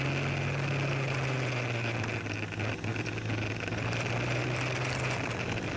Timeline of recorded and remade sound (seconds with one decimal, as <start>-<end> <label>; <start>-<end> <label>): 0.0-5.8 recorded